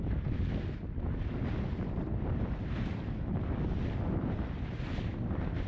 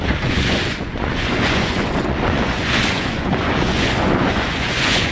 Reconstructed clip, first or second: second